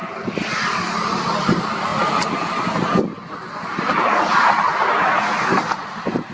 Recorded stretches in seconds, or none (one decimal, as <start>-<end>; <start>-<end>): 0.0-6.3